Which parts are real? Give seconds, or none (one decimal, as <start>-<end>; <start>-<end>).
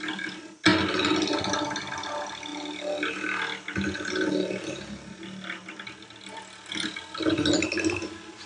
0.0-8.5